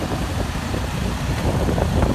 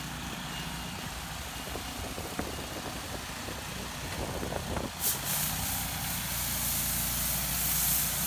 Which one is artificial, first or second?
first